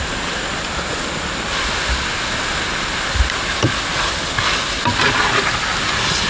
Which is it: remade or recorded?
recorded